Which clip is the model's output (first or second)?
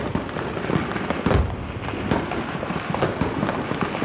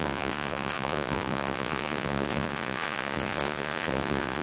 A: second